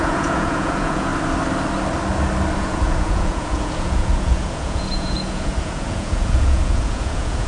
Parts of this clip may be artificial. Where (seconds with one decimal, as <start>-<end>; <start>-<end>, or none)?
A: 0.0-1.1; 2.6-7.5